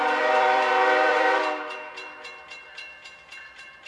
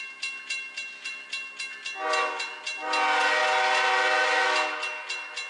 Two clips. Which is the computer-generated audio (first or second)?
first